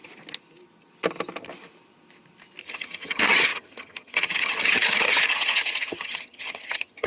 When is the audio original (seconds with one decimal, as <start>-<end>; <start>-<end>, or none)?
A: 0.0-2.6